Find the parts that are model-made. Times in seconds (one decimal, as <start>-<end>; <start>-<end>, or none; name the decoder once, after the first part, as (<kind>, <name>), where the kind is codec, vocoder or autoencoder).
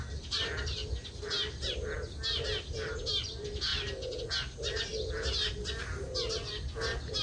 none